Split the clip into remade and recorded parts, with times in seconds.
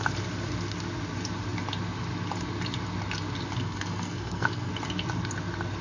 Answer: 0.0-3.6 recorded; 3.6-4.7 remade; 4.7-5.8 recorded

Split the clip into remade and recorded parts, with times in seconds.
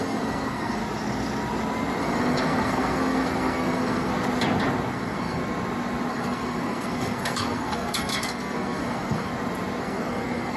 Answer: 0.0-0.8 remade; 0.8-2.0 recorded; 2.0-4.1 remade; 4.1-4.9 recorded; 4.9-5.4 remade; 5.4-6.1 recorded; 6.1-9.3 remade; 9.3-9.8 recorded; 9.8-10.6 remade